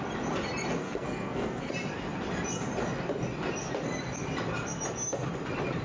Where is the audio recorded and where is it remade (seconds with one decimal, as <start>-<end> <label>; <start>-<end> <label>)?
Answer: 0.0-0.8 recorded; 0.8-1.7 remade; 1.7-5.8 recorded